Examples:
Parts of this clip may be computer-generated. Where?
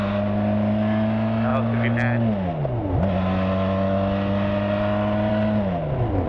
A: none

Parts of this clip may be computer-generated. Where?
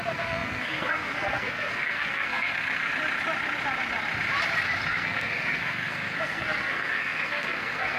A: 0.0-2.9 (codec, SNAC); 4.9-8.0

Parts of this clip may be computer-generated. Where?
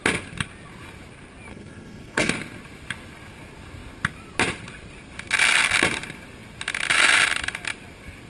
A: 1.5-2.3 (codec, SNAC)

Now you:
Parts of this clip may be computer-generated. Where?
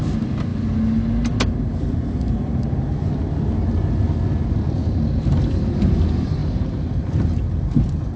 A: none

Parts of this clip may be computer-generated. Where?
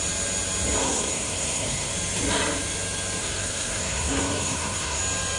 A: 0.8-1.9 (codec, SNAC); 3.2-5.0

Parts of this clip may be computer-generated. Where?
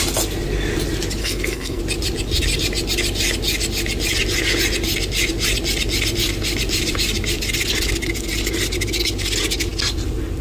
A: 1.2-1.8 (codec, SNAC)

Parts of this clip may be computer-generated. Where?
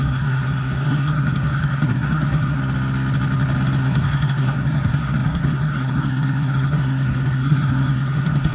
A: 0.0-2.6 (codec, SNAC); 3.8-8.5